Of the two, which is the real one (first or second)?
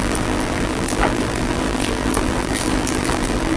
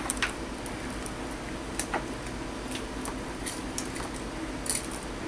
second